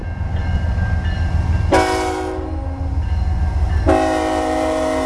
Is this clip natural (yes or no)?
yes